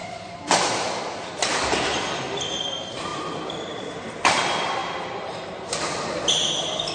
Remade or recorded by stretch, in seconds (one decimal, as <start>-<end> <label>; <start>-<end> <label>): 0.0-1.0 remade; 1.0-3.1 recorded; 3.1-3.9 remade; 3.9-4.8 recorded; 4.8-5.7 remade; 5.7-6.9 recorded